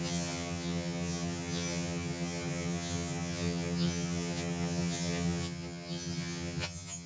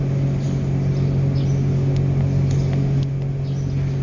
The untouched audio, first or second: second